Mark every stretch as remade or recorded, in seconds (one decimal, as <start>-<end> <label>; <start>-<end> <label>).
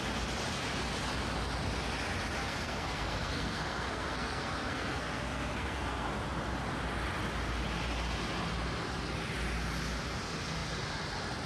0.0-2.4 recorded; 2.4-6.1 remade; 6.1-11.5 recorded